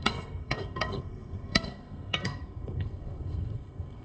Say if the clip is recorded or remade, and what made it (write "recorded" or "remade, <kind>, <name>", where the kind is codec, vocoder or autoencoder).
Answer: remade, codec, SNAC